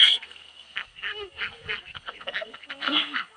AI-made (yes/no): yes